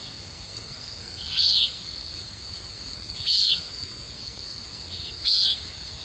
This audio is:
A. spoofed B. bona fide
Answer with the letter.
A